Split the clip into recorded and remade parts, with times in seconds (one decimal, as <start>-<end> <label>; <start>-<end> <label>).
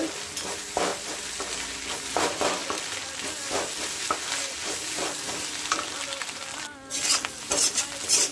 0.0-8.3 recorded